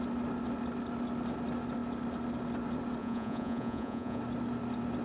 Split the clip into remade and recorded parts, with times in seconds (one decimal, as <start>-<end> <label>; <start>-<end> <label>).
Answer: 0.0-3.0 recorded; 3.0-4.2 remade; 4.2-5.0 recorded